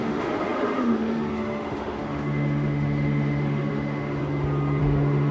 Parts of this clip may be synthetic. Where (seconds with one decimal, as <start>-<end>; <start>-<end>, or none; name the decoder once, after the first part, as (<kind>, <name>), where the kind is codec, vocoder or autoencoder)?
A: 0.0-4.2 (autoencoder, DAC-VAE); 4.8-5.3

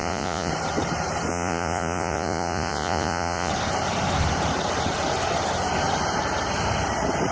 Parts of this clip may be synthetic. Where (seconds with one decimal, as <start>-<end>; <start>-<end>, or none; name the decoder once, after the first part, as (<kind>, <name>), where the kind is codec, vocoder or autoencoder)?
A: 0.0-0.5 (vocoder, Vocos); 1.3-3.5